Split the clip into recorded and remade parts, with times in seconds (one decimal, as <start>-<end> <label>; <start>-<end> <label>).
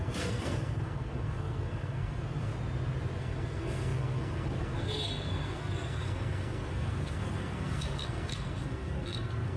0.0-2.5 remade; 2.5-3.2 recorded; 3.2-9.6 remade